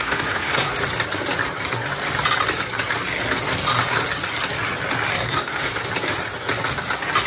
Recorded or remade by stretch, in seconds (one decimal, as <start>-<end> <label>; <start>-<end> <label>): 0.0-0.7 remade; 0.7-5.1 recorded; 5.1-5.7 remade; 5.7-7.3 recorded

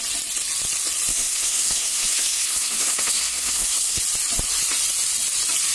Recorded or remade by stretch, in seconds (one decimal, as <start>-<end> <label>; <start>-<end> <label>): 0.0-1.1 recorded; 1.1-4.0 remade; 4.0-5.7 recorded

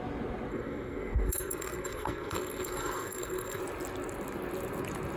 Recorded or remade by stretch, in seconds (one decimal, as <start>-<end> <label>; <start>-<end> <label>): 0.0-0.5 recorded; 0.5-3.6 remade; 3.6-5.2 recorded